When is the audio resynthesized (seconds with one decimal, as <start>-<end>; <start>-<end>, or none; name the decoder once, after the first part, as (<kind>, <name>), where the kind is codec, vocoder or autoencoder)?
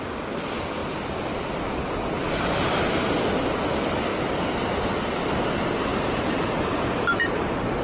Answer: 5.9-7.8 (vocoder, BigVGAN v2)